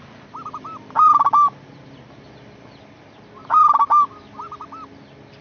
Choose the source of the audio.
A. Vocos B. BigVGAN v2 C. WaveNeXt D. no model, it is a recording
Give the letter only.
D